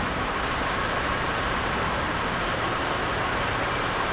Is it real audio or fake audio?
fake